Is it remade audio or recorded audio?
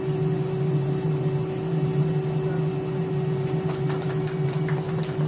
recorded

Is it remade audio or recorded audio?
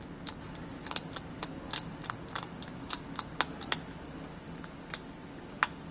recorded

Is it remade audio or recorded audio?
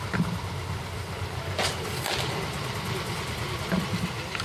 recorded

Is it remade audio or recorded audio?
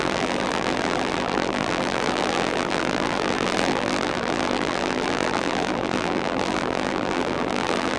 remade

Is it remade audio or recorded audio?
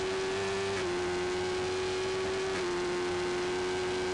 recorded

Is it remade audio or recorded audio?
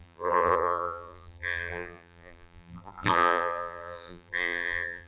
remade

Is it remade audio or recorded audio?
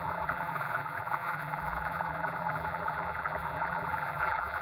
remade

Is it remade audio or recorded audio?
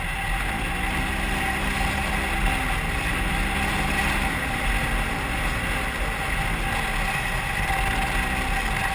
recorded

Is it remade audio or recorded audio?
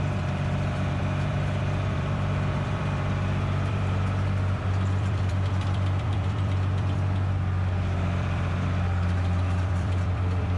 remade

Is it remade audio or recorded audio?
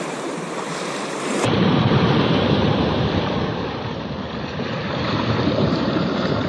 remade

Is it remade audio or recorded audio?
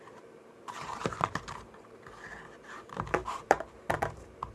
remade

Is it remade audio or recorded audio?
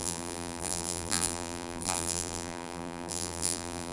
remade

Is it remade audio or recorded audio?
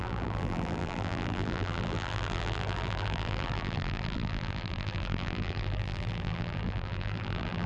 remade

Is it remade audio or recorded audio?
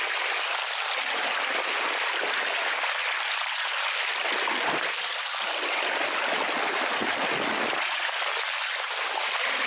recorded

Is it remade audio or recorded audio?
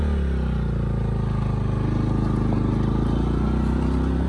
recorded